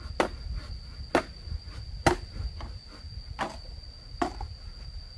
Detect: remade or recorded recorded